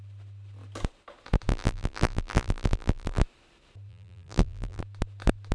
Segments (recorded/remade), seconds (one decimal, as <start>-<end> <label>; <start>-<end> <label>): 0.0-1.5 recorded; 1.5-3.2 remade; 3.2-3.9 recorded; 3.9-4.8 remade; 4.8-5.5 recorded